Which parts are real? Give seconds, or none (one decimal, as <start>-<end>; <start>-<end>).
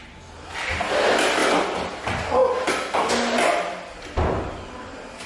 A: 0.0-5.3